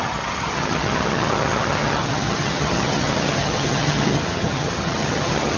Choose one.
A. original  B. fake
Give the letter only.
B